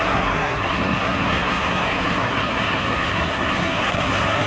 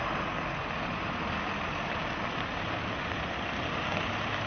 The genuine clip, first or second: second